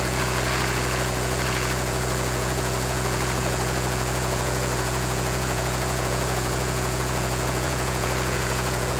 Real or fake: fake